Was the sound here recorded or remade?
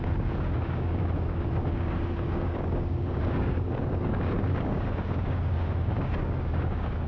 remade